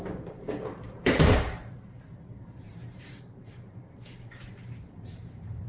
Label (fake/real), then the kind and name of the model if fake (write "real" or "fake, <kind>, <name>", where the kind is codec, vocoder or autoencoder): fake, vocoder, BigVGAN v2